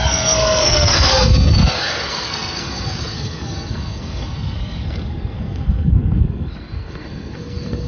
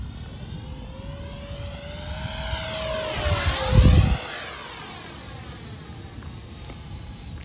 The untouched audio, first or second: second